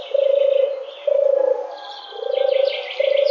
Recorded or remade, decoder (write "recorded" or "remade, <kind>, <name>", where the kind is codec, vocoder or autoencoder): recorded